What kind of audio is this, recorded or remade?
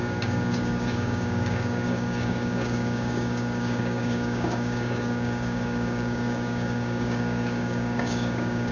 remade